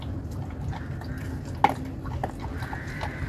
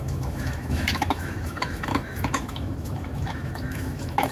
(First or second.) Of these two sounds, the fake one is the second